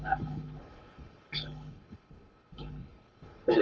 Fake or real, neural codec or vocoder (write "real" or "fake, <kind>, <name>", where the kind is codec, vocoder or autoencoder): fake, codec, HILCodec